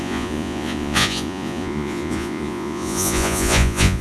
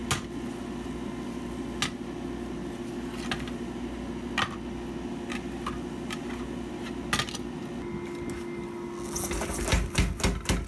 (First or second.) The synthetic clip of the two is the first